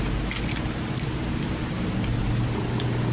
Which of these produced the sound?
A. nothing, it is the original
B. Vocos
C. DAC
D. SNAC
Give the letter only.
A